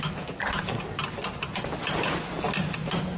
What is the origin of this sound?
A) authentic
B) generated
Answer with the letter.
A